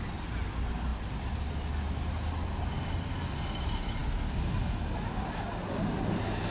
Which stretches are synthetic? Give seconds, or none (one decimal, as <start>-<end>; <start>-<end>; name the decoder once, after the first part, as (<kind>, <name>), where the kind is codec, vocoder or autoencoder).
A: none